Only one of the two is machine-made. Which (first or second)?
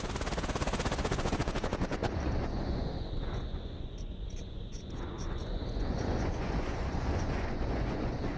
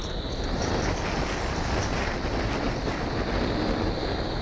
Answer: first